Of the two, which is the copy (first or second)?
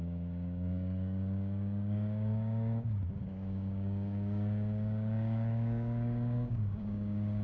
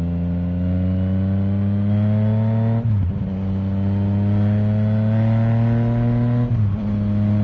first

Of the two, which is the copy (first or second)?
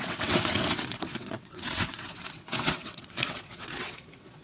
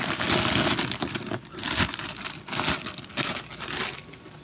first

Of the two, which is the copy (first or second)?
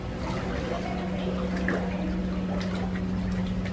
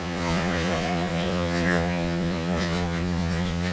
second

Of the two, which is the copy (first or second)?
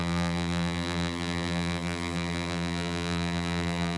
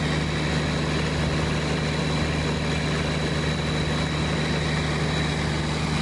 first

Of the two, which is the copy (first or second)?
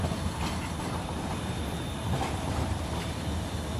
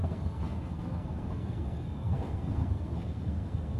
second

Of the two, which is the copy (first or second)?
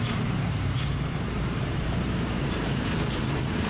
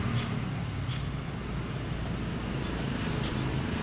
first